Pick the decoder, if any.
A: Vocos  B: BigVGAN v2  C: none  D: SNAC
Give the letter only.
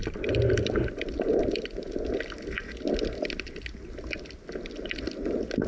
C